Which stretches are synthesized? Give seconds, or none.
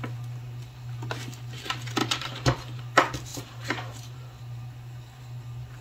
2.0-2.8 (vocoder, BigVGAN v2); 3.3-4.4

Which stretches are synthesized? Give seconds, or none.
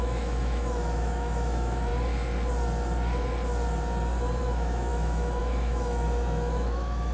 0.0-1.9 (autoencoder, DAC-VAE); 4.4-7.1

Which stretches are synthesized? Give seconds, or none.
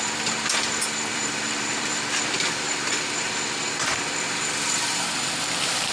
1.1-3.3 (vocoder, BigVGAN v2)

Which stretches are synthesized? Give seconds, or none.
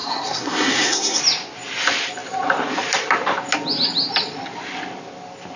0.0-1.2 (codec, SNAC)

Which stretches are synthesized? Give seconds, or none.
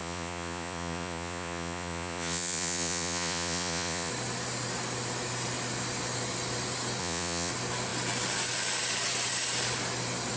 0.0-4.1 (vocoder, Vocos); 7.0-7.5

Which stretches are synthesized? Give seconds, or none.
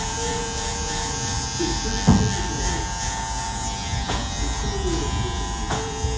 0.0-1.9 (vocoder, Vocos); 2.5-6.2